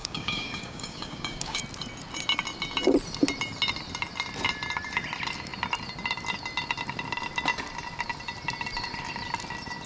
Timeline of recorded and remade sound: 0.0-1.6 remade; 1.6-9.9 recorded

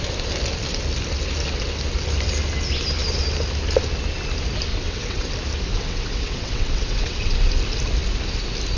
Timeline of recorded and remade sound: 0.0-4.7 recorded; 4.7-5.3 remade; 5.3-5.7 recorded; 5.7-7.5 remade; 7.5-8.8 recorded

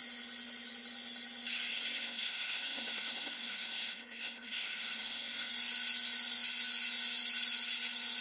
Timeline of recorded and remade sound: 0.0-1.7 recorded; 1.7-5.5 remade; 5.5-8.2 recorded

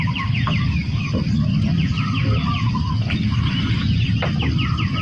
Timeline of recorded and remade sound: 0.0-0.8 recorded; 0.8-3.8 remade; 3.8-5.0 recorded

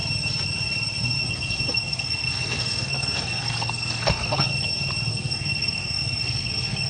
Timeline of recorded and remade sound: 0.0-1.3 recorded; 1.3-4.5 remade; 4.5-5.1 recorded; 5.1-6.9 remade

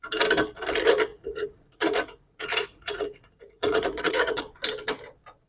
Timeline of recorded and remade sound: 0.0-1.1 recorded; 1.1-4.4 remade; 4.4-5.5 recorded

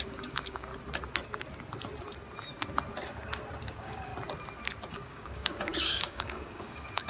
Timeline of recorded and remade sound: 0.0-0.7 remade; 0.7-3.6 recorded; 3.6-4.1 remade; 4.1-4.9 recorded; 4.9-7.1 remade

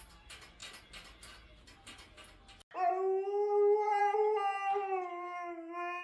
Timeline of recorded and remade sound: 0.0-6.0 recorded